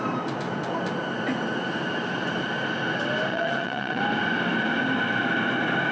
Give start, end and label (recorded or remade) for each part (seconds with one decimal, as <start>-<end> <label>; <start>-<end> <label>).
0.0-3.3 recorded; 3.3-4.0 remade; 4.0-5.9 recorded